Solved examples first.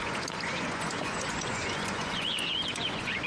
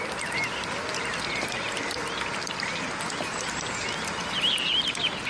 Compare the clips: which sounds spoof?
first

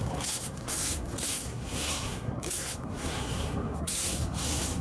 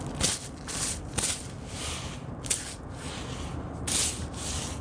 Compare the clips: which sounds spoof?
first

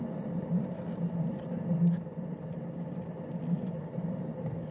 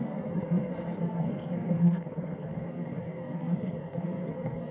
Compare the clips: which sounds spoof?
second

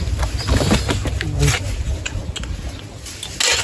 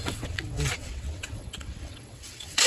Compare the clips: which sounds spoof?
second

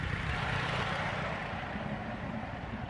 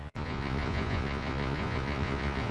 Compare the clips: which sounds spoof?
second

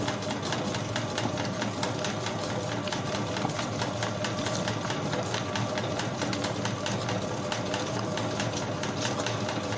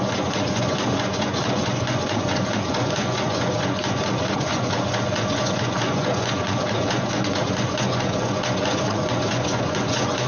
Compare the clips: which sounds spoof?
second